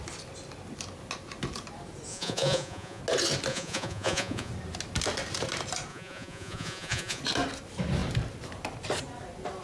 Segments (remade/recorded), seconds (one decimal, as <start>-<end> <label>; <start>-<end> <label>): 0.0-2.1 recorded; 2.1-3.0 remade; 3.0-3.5 recorded; 3.5-4.5 remade; 4.5-5.9 recorded; 5.9-7.2 remade; 7.2-9.6 recorded